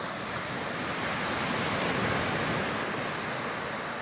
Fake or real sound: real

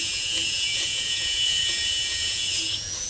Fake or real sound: fake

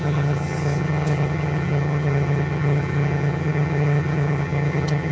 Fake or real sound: fake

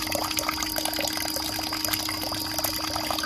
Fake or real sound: real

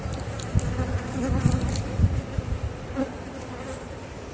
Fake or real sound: real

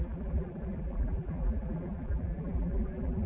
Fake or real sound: fake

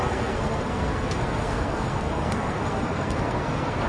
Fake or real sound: fake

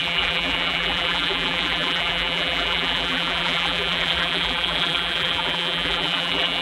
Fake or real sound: fake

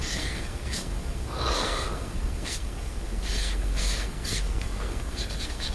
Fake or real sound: fake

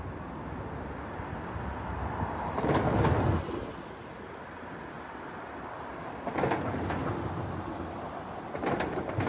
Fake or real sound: real